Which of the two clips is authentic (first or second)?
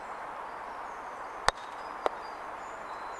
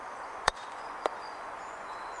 first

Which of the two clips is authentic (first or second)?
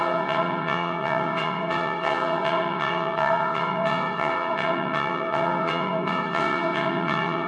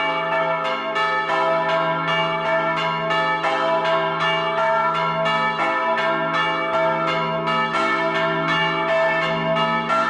second